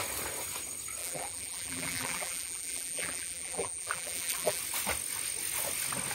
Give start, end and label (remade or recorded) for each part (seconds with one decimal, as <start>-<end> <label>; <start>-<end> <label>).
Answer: 0.0-1.0 recorded; 1.0-4.6 remade; 4.6-6.1 recorded